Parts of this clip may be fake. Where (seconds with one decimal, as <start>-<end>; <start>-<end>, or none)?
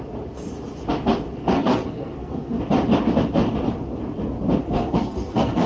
1.4-2.6; 4.6-5.7